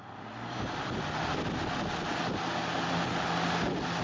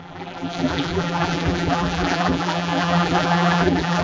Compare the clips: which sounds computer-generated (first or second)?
second